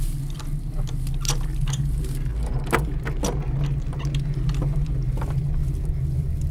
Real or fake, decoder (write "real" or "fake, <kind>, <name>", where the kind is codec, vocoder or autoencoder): real